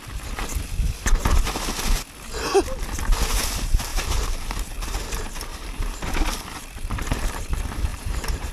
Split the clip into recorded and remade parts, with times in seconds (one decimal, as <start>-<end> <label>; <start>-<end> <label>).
0.0-3.9 recorded; 3.9-4.7 remade; 4.7-5.5 recorded; 5.5-7.4 remade; 7.4-7.9 recorded; 7.9-8.5 remade